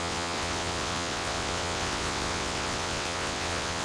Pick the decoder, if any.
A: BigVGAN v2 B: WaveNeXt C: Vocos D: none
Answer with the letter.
B